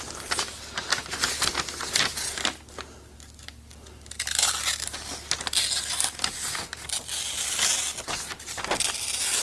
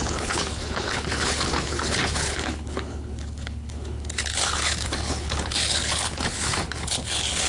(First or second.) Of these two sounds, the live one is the first